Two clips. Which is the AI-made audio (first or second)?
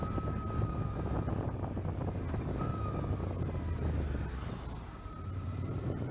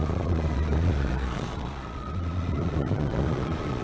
second